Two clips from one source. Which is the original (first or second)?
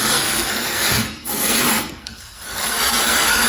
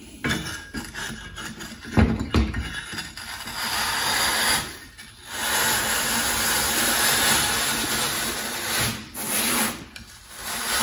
second